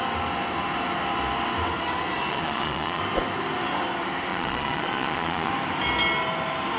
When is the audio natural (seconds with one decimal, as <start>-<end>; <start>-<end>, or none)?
0.0-2.3; 3.0-4.3; 5.5-6.8